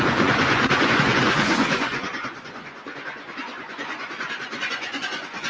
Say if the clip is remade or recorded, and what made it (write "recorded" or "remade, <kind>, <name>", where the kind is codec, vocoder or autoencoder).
remade, vocoder, Vocos